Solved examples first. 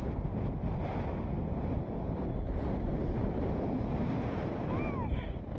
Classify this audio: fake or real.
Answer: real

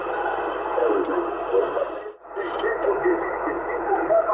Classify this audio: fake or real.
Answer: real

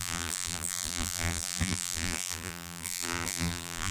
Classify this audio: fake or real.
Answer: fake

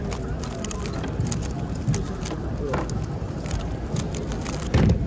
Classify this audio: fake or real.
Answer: real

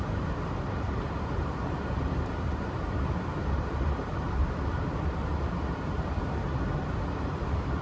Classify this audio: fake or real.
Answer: fake